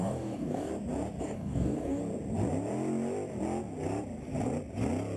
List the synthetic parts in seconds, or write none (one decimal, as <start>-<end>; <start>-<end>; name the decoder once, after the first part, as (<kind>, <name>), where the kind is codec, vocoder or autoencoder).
0.0-0.7 (codec, DAC); 1.2-2.0